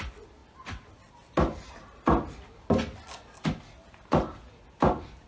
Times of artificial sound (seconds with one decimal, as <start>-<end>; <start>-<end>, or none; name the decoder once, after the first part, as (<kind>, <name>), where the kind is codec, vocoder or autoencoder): none